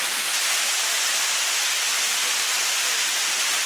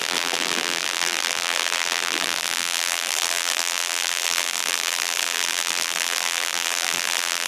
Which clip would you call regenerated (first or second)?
second